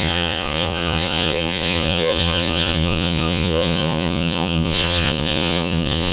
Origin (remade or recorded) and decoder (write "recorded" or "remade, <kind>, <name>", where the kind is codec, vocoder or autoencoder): remade, vocoder, Vocos